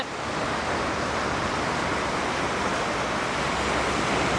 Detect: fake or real real